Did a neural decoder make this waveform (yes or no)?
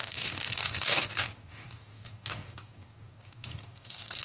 yes